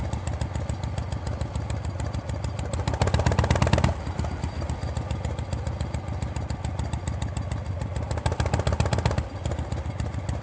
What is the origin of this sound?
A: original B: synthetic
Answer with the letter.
A